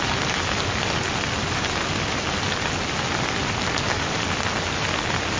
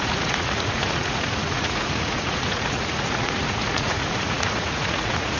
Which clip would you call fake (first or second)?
second